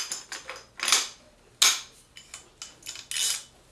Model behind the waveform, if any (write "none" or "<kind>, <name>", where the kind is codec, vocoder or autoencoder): none